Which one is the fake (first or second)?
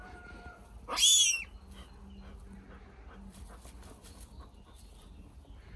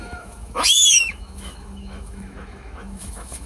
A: second